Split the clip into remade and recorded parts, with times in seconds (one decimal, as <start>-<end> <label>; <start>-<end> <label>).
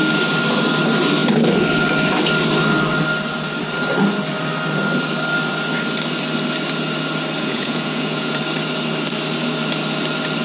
0.0-7.4 recorded; 7.4-8.4 remade; 8.4-10.4 recorded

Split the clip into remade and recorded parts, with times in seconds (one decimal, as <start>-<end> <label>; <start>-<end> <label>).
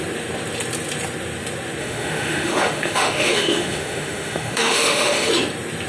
0.0-1.8 recorded; 1.8-5.3 remade; 5.3-5.9 recorded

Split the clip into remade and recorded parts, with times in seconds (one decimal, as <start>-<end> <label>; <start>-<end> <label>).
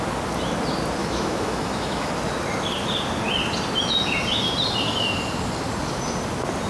0.0-1.0 recorded; 1.0-2.1 remade; 2.1-6.7 recorded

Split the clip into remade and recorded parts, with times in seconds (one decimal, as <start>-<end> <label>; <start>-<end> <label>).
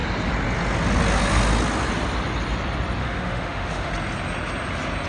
0.0-3.0 recorded; 3.0-3.9 remade; 3.9-5.1 recorded